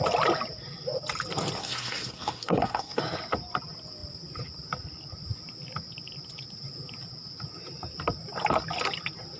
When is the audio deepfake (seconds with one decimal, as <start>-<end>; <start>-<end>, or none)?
1.6-3.0